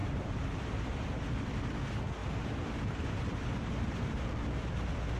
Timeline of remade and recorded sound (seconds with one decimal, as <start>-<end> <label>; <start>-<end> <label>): 0.0-1.8 remade; 1.8-2.2 recorded; 2.2-4.2 remade; 4.2-5.2 recorded